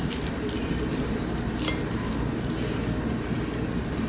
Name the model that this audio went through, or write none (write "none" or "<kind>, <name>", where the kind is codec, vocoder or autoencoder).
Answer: none